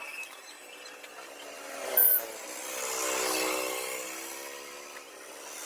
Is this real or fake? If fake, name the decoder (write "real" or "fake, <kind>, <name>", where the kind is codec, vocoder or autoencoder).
real